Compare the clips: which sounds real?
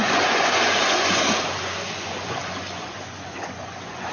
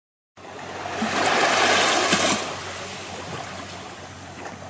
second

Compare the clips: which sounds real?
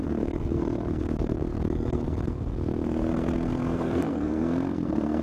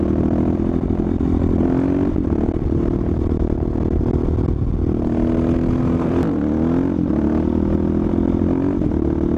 second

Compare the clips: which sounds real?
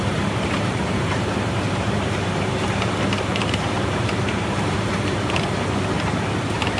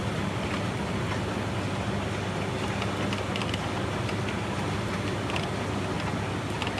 second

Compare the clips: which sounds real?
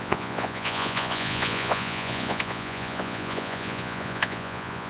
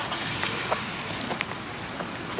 second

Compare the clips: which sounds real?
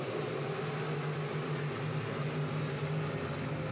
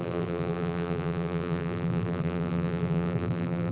first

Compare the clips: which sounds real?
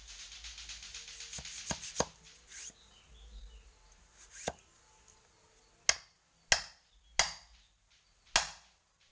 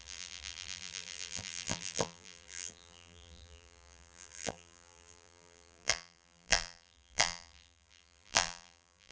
first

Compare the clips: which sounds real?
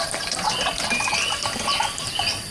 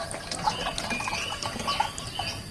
second